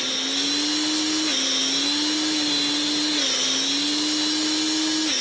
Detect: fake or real real